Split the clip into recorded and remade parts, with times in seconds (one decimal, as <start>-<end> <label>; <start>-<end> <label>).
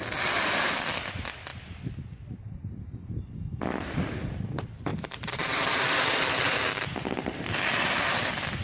0.0-1.5 recorded; 1.5-2.3 remade; 2.3-4.9 recorded; 4.9-7.8 remade; 7.8-8.6 recorded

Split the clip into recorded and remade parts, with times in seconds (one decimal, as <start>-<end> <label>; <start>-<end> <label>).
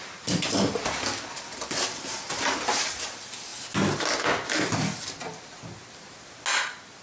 0.0-7.0 recorded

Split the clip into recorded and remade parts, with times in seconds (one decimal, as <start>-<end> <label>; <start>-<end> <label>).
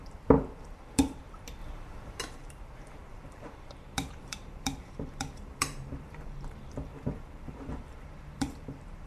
0.0-9.1 remade